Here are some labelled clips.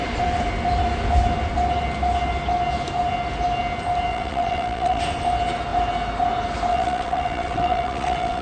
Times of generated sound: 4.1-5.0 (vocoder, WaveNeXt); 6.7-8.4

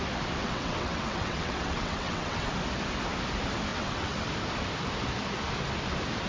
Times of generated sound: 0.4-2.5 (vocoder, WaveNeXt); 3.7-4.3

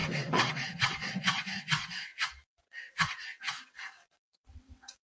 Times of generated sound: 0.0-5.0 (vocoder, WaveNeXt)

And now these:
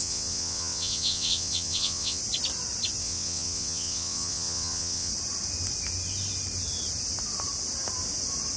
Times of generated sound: 0.0-2.2 (vocoder, WaveNeXt); 3.0-5.1

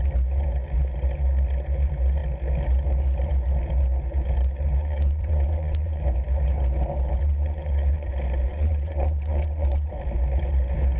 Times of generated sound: 4.8-6.0 (vocoder, WaveNeXt); 7.2-8.1; 8.5-9.9

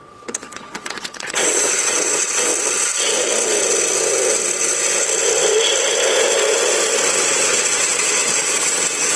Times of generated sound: 0.0-2.5 (vocoder, WaveNeXt); 7.1-9.2

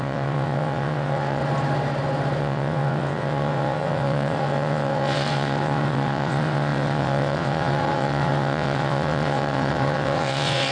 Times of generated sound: 0.0-1.4 (vocoder, WaveNeXt); 2.4-10.7

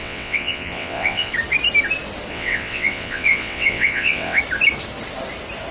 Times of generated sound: 0.0-1.3 (vocoder, WaveNeXt); 2.3-4.4